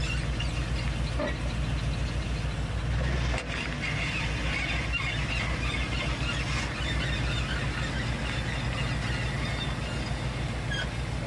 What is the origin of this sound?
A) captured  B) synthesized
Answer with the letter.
A